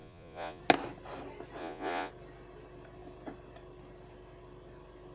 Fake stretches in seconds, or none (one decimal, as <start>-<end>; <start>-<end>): 0.0-0.6; 1.6-2.1